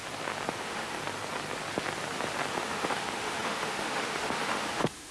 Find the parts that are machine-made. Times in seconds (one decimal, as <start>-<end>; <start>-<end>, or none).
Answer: 0.6-1.0; 2.5-5.1